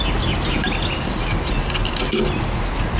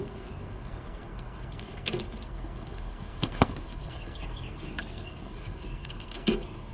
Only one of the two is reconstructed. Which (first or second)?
second